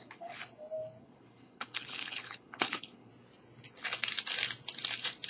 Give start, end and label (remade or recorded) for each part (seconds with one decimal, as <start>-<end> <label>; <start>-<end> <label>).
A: 0.0-0.4 remade; 0.4-1.0 recorded; 1.0-3.1 remade; 3.1-5.3 recorded